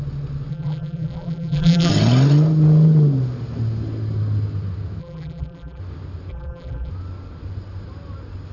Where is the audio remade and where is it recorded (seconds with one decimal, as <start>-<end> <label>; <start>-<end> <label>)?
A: 0.0-0.5 recorded; 0.5-1.9 remade; 1.9-5.0 recorded; 5.0-5.8 remade; 5.8-6.3 recorded; 6.3-6.9 remade; 6.9-8.5 recorded